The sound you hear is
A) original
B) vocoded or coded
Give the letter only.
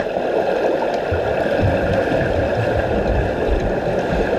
A